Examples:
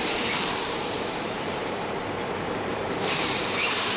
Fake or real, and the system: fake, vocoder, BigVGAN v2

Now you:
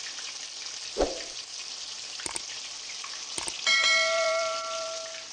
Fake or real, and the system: fake, vocoder, BigVGAN v2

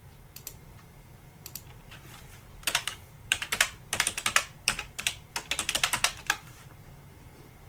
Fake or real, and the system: fake, vocoder, BigVGAN v2